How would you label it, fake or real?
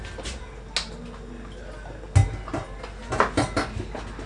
real